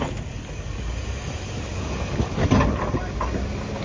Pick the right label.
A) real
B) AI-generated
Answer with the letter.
A